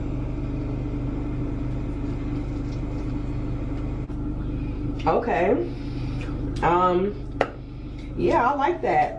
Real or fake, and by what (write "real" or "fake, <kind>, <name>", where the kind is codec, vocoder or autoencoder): real